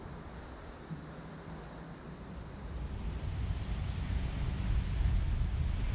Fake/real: real